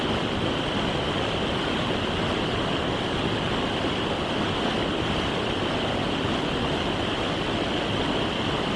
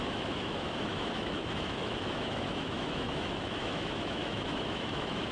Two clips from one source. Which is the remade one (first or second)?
second